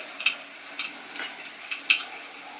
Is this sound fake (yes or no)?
no